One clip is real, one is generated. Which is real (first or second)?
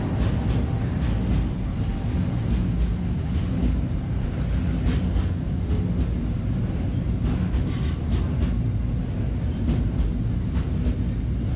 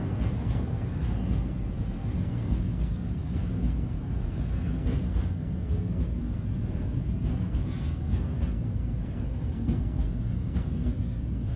first